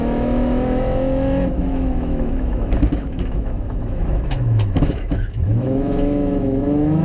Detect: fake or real fake